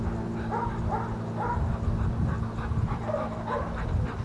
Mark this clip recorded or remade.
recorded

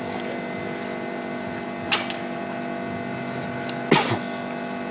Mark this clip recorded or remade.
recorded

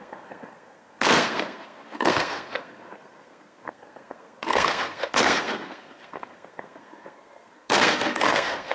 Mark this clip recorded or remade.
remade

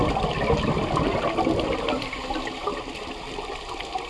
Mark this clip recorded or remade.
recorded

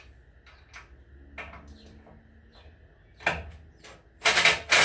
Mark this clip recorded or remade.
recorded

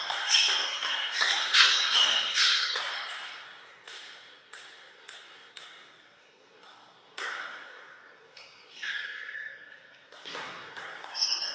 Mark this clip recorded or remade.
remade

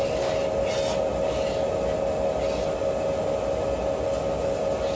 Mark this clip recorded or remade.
recorded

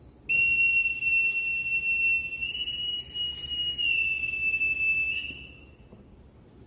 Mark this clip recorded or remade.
recorded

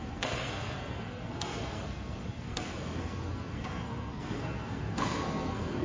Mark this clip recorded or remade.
remade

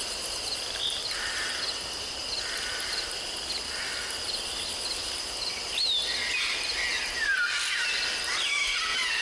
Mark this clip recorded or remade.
recorded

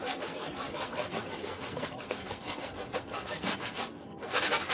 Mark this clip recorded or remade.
remade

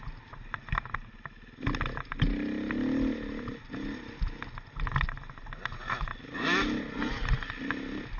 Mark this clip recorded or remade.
recorded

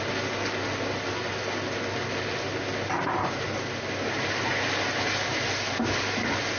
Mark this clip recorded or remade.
recorded